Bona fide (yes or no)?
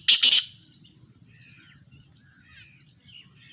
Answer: yes